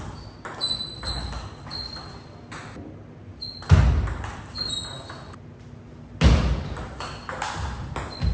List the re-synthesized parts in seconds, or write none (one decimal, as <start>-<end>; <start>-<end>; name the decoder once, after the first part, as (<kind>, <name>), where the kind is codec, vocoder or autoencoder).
none